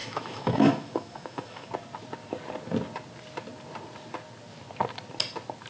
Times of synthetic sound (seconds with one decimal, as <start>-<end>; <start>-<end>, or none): 0.0-1.7